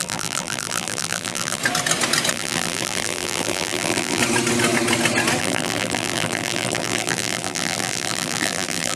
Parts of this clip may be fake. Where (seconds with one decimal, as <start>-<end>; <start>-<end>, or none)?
0.0-1.6; 2.3-4.2; 5.4-9.0